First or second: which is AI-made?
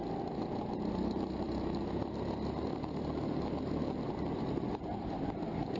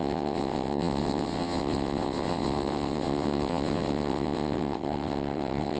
second